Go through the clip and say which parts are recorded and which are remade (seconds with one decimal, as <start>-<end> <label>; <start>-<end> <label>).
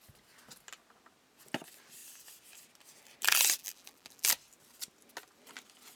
0.0-3.6 recorded; 3.6-4.3 remade; 4.3-6.0 recorded